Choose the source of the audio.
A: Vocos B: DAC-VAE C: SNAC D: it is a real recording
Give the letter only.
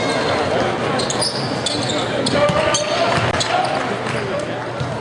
D